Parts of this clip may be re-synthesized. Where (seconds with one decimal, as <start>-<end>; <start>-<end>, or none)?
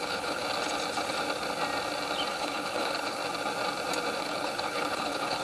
0.0-0.4; 2.3-3.2; 4.2-5.4